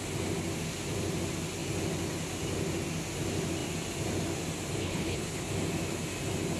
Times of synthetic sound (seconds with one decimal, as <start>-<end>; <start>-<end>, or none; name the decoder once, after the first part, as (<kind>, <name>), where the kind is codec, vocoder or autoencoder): 4.8-5.5 (codec, HILCodec)